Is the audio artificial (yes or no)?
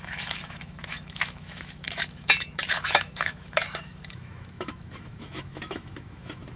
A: yes